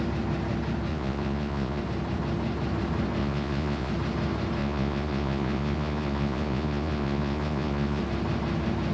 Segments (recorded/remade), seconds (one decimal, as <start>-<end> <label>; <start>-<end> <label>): 0.0-0.9 recorded; 0.9-1.8 remade; 1.8-3.2 recorded; 3.2-3.9 remade; 3.9-4.6 recorded; 4.6-8.0 remade; 8.0-8.9 recorded